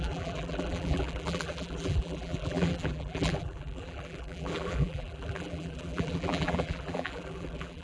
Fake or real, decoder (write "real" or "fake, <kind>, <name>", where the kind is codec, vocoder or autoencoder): fake, vocoder, BigVGAN v2